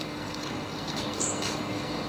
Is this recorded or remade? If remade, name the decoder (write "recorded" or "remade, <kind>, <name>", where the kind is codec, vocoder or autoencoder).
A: remade, codec, SNAC